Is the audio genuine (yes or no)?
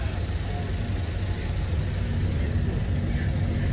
yes